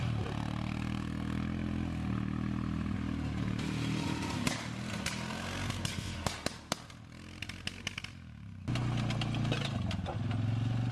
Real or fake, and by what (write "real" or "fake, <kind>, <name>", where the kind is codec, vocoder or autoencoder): real